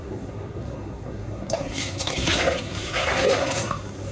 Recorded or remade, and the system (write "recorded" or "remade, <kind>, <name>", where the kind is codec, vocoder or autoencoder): remade, codec, SNAC